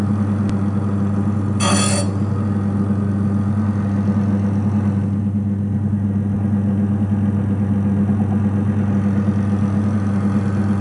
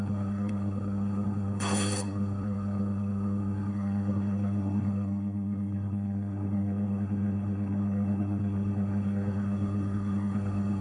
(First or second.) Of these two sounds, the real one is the first